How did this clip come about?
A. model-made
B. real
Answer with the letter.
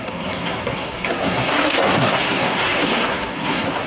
A